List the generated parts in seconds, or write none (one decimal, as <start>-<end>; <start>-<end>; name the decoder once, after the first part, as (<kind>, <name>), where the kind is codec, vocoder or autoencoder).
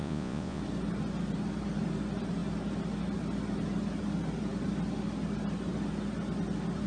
0.0-0.6 (vocoder, Vocos)